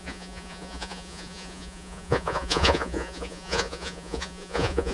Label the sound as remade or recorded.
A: remade